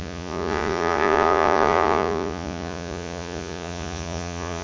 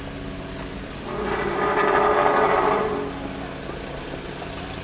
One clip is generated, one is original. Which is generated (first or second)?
first